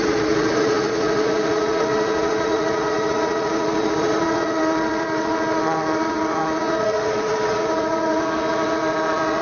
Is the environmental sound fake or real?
fake